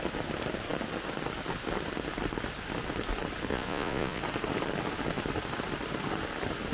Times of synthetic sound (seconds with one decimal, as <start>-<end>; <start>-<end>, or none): 3.5-4.2